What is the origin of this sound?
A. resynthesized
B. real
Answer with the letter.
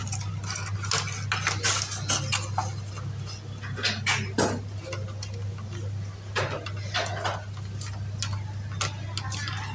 B